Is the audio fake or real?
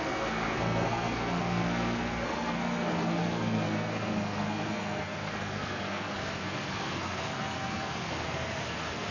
fake